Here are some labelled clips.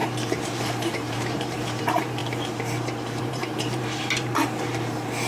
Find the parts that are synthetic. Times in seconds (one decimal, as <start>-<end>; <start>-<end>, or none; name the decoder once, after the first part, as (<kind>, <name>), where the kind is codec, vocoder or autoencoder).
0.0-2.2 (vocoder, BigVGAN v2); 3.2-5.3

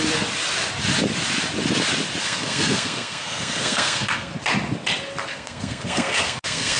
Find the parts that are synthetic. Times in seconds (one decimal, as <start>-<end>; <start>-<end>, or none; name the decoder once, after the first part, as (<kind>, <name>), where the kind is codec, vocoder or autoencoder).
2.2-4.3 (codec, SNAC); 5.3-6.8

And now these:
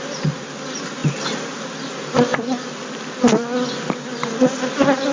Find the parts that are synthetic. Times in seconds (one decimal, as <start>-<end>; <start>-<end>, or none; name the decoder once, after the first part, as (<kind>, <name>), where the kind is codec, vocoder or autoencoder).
none

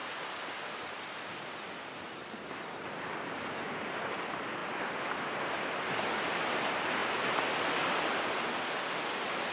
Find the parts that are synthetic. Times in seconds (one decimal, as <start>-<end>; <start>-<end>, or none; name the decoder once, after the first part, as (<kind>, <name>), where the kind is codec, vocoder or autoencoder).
none

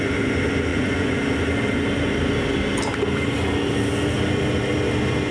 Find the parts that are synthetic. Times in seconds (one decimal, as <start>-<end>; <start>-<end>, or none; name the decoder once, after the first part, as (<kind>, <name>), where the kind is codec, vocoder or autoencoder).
0.7-1.2 (vocoder, Vocos)

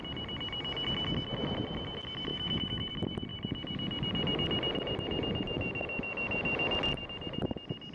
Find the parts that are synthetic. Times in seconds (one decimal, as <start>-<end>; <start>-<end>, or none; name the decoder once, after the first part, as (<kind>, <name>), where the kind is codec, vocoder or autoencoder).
2.3-2.9 (autoencoder, DAC-VAE)

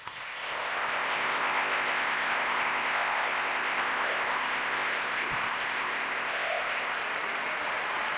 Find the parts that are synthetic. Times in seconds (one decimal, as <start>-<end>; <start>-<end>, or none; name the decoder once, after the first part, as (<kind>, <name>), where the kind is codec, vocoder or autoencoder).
0.0-7.0 (codec, ZipCodec)

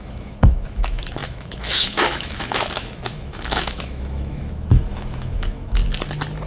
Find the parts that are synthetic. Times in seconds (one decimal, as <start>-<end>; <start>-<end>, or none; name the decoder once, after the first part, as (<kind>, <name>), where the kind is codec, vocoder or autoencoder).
0.0-5.8 (autoencoder, DAC-VAE)